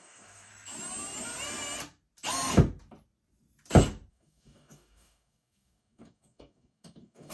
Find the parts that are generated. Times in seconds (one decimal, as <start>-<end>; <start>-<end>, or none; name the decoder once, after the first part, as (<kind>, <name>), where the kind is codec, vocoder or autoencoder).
0.0-0.5 (codec, DAC); 4.1-7.3